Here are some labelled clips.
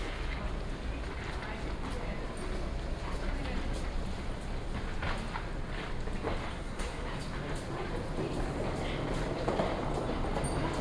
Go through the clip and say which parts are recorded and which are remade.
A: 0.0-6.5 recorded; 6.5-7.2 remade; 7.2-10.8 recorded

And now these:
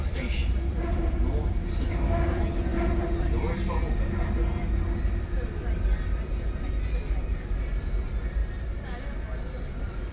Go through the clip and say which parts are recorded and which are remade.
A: 0.0-10.1 recorded

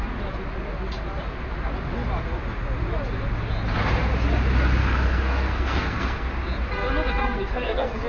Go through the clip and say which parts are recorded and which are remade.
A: 0.0-4.8 recorded; 4.8-6.3 remade; 6.3-7.2 recorded; 7.2-8.1 remade

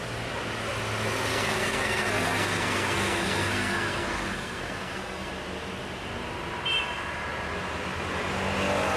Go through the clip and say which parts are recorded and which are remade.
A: 0.0-1.3 recorded; 1.3-5.3 remade; 5.3-9.0 recorded

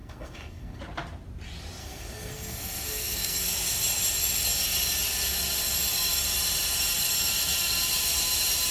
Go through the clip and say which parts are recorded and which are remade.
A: 0.0-0.8 remade; 0.8-1.8 recorded; 1.8-3.4 remade; 3.4-8.7 recorded